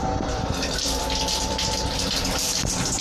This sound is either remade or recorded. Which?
remade